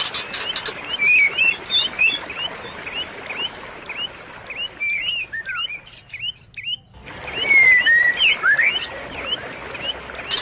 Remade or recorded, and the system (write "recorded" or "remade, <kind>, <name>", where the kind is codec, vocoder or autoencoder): recorded